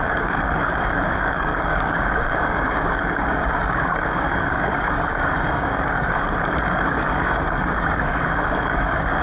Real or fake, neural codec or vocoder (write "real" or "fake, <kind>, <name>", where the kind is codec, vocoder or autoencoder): fake, codec, DAC